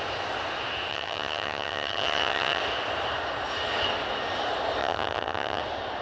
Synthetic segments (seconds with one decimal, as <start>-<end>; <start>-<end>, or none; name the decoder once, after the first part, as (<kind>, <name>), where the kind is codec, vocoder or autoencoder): 0.9-2.6 (vocoder, HiFi-GAN); 4.8-5.6

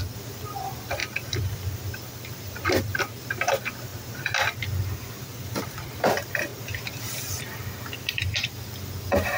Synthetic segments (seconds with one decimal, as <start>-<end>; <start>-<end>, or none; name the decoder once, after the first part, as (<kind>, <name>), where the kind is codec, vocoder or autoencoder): 0.0-3.9 (vocoder, BigVGAN v2); 5.1-6.5; 7.4-9.4